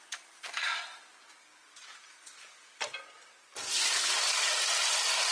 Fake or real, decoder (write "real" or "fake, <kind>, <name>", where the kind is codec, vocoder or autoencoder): real